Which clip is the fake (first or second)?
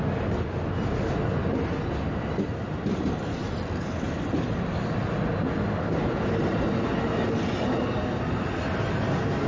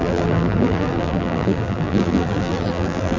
second